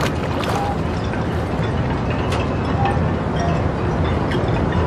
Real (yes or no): yes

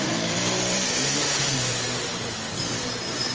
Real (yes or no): no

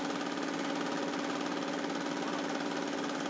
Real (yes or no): yes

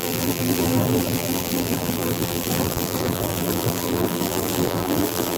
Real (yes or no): no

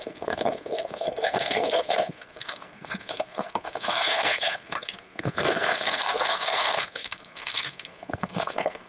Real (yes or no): no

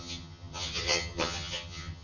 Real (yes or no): no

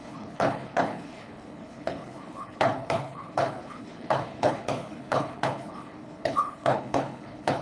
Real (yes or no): no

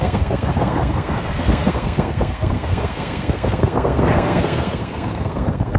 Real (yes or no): no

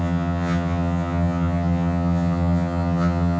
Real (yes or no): no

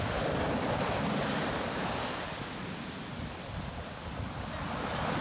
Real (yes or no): yes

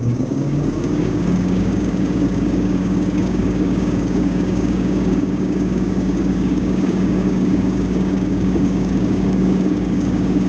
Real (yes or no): no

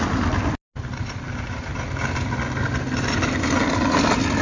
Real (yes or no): yes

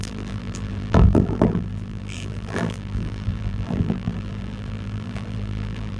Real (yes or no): no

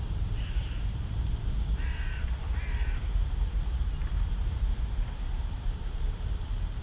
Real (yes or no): no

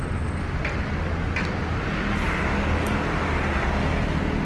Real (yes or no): yes